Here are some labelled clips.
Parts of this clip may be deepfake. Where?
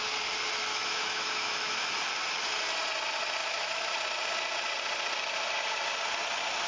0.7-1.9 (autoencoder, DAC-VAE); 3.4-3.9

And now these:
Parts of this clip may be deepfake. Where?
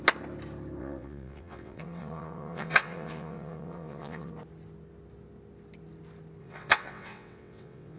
0.8-4.3 (vocoder, WaveNeXt); 6.4-8.0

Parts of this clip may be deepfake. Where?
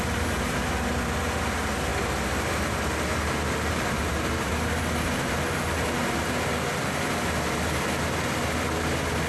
none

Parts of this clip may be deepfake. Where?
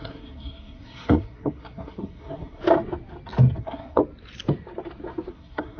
0.0-2.6 (codec, SNAC); 3.6-4.0; 5.3-5.8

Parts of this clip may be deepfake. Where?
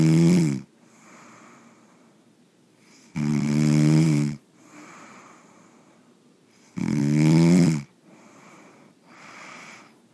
3.3-7.0 (vocoder, BigVGAN v2)